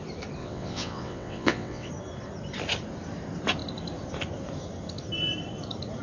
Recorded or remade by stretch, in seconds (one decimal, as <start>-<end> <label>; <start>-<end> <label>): 0.0-0.4 recorded; 0.4-1.9 remade; 1.9-6.0 recorded